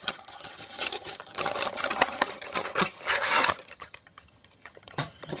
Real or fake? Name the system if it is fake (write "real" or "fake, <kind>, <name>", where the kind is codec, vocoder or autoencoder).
fake, vocoder, HiFi-GAN